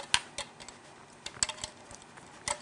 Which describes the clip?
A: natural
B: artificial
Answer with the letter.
A